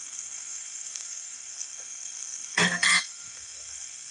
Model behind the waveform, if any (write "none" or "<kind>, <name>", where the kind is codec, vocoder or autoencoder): codec, SNAC